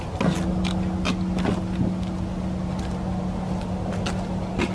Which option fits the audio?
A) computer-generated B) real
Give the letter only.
B